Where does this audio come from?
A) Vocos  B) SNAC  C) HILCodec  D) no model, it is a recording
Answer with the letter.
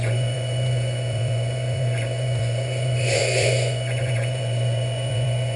A